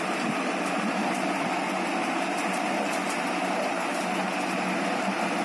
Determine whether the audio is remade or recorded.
recorded